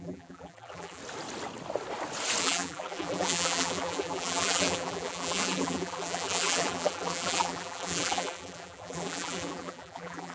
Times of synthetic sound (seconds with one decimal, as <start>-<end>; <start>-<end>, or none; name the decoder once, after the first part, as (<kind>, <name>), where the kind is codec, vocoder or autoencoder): 0.0-1.0 (vocoder, BigVGAN v2); 2.4-10.3